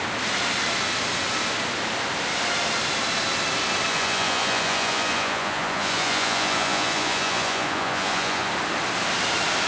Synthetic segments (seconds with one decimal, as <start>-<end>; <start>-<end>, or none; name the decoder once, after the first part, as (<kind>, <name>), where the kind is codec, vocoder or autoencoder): 3.9-8.5 (vocoder, Vocos)